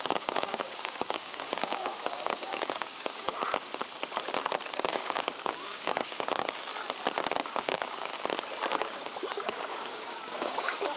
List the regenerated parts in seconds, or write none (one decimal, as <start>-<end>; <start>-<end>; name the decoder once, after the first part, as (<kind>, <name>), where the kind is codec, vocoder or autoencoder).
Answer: 0.0-3.3 (codec, DAC); 4.9-6.7; 7.6-8.1; 8.8-11.0